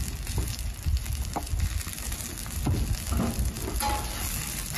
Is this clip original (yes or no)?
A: yes